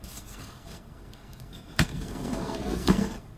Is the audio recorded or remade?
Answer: remade